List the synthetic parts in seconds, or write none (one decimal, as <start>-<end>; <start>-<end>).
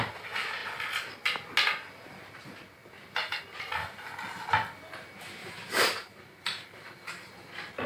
2.8-3.4; 5.4-7.3